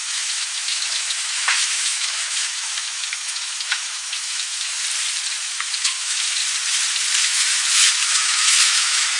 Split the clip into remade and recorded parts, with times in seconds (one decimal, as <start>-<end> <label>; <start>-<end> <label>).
0.0-4.7 remade; 4.7-5.4 recorded; 5.4-6.4 remade; 6.4-7.2 recorded; 7.2-9.2 remade